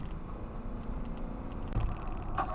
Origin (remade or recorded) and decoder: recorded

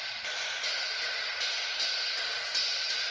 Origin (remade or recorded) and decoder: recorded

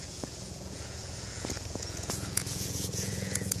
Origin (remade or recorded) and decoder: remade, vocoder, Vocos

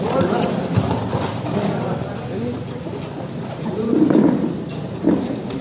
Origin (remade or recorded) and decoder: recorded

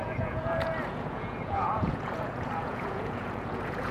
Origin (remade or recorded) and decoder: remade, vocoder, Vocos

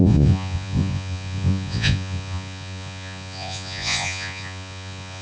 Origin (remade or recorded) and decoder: remade, vocoder, Vocos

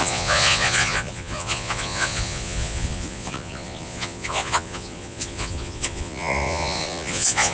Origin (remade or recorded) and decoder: remade, vocoder, Vocos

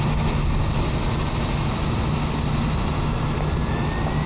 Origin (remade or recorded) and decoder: recorded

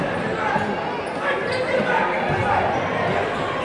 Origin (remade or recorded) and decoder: recorded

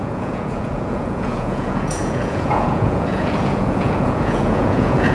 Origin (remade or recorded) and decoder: remade, vocoder, Vocos